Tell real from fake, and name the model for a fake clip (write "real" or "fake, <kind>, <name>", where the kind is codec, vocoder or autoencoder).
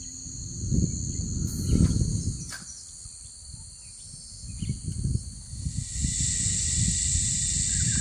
real